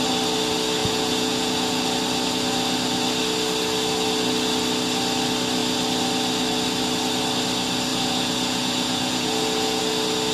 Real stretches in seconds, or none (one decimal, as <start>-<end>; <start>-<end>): 0.0-0.8; 1.8-7.9; 9.8-10.3